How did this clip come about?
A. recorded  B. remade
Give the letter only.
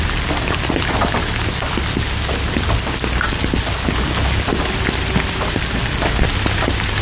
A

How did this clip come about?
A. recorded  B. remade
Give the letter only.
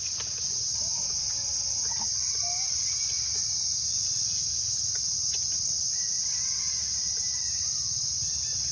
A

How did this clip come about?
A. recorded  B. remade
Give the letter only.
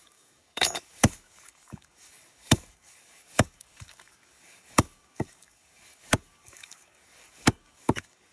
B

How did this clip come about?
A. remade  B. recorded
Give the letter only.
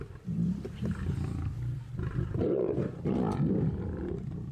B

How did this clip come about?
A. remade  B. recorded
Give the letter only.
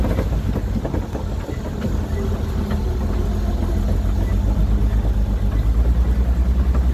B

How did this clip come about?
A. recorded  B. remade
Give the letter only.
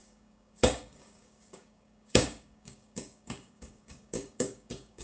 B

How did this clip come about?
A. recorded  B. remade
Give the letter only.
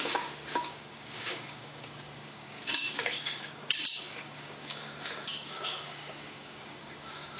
B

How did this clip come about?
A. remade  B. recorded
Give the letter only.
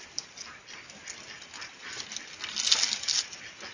B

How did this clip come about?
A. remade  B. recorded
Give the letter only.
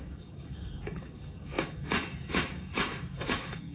A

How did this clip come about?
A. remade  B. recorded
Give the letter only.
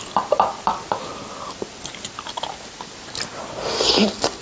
B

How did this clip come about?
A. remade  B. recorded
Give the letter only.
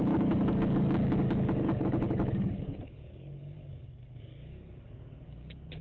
A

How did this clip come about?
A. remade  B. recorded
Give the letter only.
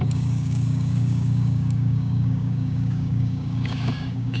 A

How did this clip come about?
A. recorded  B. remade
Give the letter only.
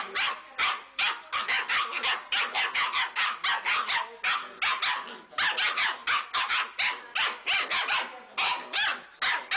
A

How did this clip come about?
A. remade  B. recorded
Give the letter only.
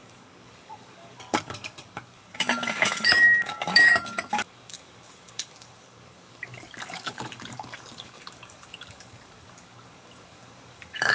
A